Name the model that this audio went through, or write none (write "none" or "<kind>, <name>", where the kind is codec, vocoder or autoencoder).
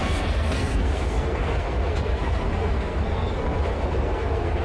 codec, SNAC